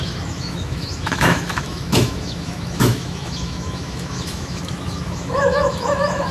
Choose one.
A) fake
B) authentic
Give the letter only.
A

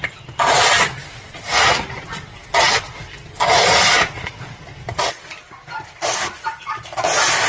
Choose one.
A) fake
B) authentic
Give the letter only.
B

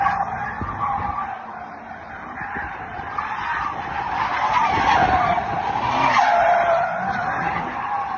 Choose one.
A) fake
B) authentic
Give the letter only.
B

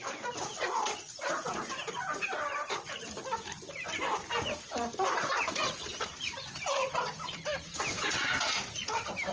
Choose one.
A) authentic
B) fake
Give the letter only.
B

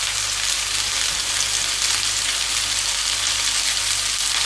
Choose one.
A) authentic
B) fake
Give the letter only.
A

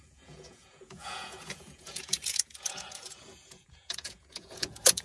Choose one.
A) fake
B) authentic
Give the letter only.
A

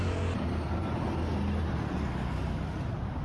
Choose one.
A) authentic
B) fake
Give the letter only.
A